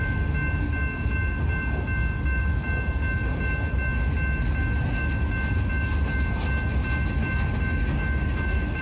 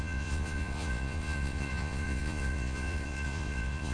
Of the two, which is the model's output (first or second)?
second